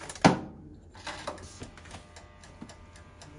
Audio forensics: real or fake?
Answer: real